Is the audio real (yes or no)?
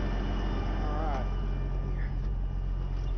yes